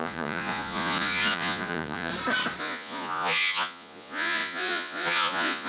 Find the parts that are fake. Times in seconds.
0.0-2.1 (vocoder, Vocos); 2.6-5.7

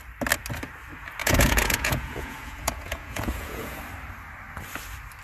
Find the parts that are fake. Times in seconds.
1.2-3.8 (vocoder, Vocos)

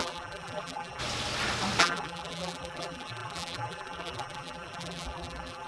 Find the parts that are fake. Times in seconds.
0.0-1.0 (vocoder, BigVGAN v2); 1.8-5.7

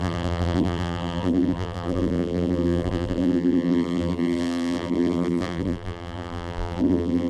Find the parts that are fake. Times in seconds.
0.0-7.3 (vocoder, BigVGAN v2)